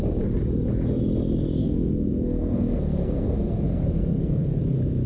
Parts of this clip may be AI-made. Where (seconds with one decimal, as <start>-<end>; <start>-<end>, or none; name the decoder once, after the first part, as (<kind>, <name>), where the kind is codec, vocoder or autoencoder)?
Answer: 1.6-4.6 (codec, SNAC)